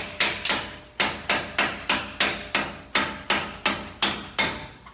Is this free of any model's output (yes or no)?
yes